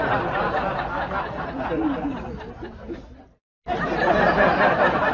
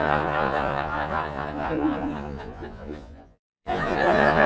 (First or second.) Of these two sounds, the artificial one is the second